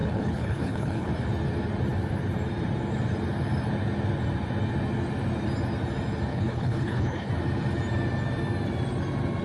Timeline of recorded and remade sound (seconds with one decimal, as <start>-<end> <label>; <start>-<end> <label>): 0.0-1.1 remade; 1.1-6.3 recorded; 6.3-7.3 remade; 7.3-9.4 recorded

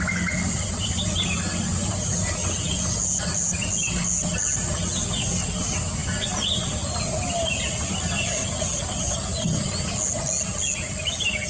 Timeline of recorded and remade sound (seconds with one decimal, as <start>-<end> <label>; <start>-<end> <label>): 0.0-11.5 recorded